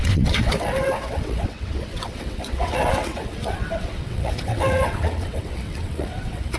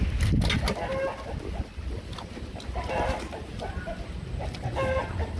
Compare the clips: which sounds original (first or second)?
second